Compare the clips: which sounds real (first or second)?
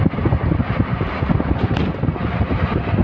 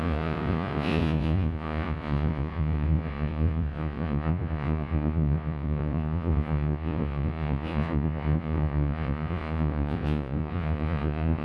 first